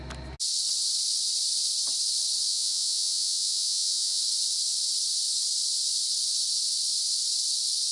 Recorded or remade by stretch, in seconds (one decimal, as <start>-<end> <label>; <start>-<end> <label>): 0.0-2.5 recorded; 2.5-4.2 remade; 4.2-7.9 recorded